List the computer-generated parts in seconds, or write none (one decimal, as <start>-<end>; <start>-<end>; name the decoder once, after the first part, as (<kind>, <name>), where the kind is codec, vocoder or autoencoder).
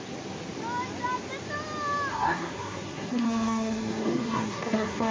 2.1-5.1 (codec, SNAC)